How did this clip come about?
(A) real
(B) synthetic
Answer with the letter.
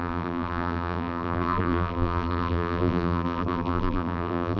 B